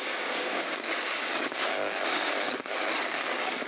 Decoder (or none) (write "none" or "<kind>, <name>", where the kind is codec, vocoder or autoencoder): codec, DAC